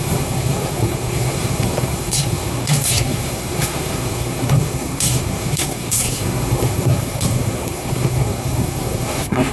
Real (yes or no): no